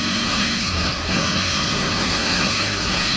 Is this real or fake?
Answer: fake